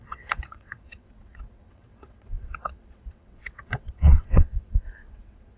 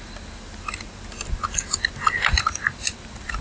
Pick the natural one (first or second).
second